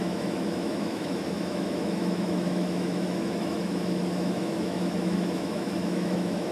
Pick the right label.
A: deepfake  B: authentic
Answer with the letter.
A